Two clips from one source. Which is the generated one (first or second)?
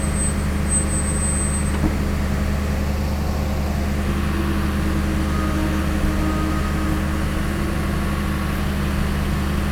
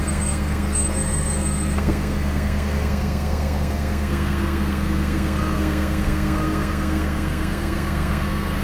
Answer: second